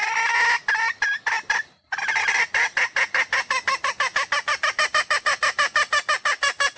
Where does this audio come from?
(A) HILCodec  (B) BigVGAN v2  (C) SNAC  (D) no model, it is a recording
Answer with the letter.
D